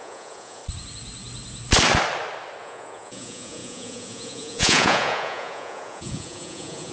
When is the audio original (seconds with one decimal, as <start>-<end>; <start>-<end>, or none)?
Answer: 0.6-2.6